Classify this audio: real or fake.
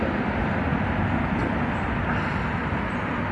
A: real